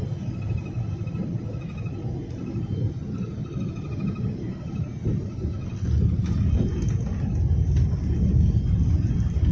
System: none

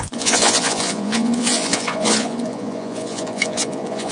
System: vocoder, Vocos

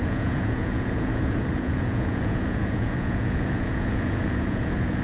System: vocoder, Vocos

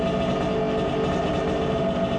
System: none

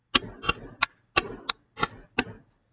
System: none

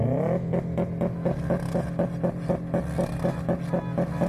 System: none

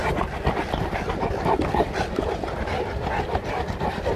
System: none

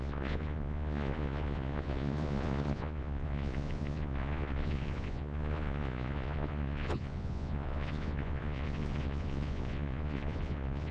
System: vocoder, Vocos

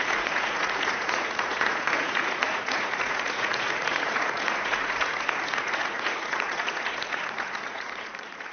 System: vocoder, Vocos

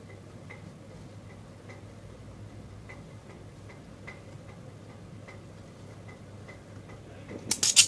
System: none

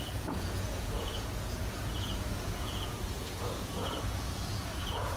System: vocoder, Vocos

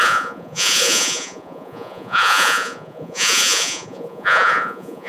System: vocoder, Vocos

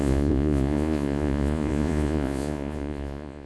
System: vocoder, Vocos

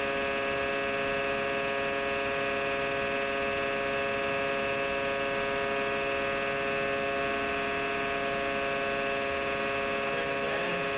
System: none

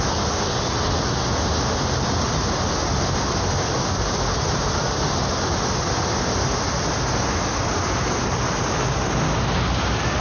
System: none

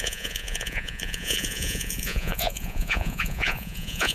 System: vocoder, Vocos